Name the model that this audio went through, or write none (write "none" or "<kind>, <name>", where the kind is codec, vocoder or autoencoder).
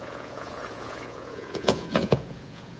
vocoder, Vocos